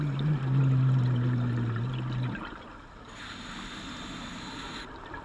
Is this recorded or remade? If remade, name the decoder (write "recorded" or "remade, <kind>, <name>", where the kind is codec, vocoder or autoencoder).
recorded